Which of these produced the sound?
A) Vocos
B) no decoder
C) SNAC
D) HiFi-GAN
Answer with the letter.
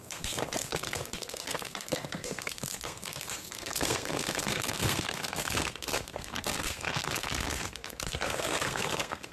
C